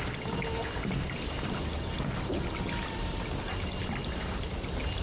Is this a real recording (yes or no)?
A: yes